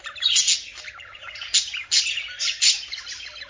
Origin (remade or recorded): recorded